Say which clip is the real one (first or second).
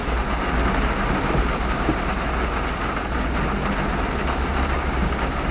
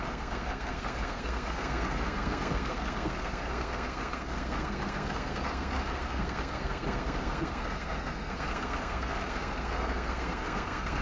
first